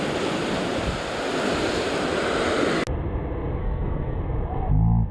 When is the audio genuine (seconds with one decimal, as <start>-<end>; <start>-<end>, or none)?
0.0-3.6; 4.2-5.1